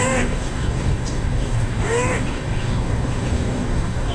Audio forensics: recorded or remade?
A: remade